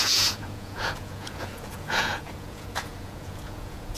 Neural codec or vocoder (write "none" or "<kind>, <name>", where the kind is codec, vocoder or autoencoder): vocoder, Vocos